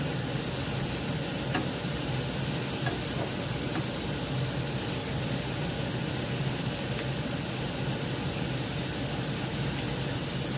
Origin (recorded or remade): recorded